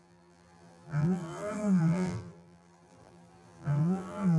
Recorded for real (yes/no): no